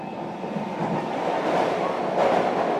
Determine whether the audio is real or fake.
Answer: real